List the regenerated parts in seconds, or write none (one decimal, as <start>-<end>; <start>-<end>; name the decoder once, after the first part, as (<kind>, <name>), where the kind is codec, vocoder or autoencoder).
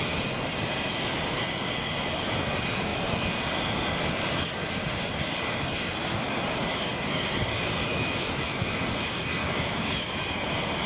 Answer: 7.9-8.8 (autoencoder, DAC-VAE); 9.4-10.2